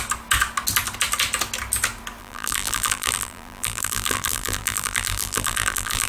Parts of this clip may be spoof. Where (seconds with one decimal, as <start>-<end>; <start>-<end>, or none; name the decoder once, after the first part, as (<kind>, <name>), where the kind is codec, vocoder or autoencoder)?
2.2-6.1 (vocoder, BigVGAN v2)